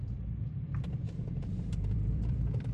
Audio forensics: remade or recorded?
remade